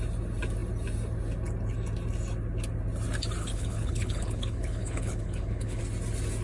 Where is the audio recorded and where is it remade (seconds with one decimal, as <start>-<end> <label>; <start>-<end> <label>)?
0.0-3.4 recorded; 3.4-5.8 remade; 5.8-6.4 recorded

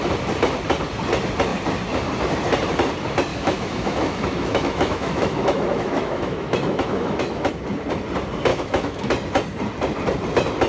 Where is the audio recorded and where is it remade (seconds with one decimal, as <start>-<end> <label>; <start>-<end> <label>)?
0.0-3.3 recorded; 3.3-7.5 remade; 7.5-8.5 recorded; 8.5-9.1 remade; 9.1-10.7 recorded

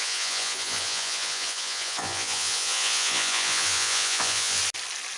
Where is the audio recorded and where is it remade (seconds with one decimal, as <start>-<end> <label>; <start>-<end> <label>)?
0.0-4.6 remade; 4.6-5.2 recorded

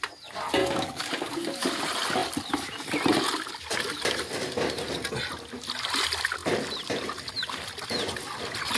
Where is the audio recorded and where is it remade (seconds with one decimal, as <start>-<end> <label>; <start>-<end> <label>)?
0.0-0.6 recorded; 0.6-1.7 remade; 1.7-8.8 recorded

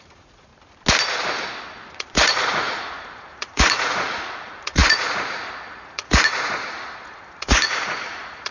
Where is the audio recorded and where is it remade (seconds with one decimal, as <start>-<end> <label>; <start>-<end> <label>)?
0.0-0.5 remade; 0.5-1.9 recorded; 1.9-8.5 remade